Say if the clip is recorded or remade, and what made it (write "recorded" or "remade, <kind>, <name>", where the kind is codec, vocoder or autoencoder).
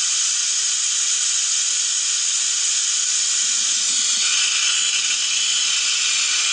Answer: remade, vocoder, BigVGAN v2